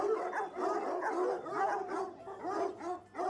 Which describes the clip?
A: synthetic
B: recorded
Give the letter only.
B